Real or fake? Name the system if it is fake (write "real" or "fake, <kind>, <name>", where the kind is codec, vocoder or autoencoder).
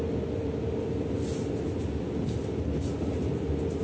real